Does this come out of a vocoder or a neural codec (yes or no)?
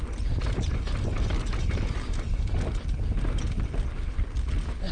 no